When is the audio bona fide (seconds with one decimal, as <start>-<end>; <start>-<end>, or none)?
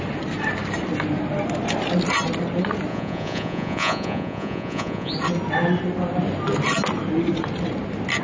0.0-2.9; 5.1-8.2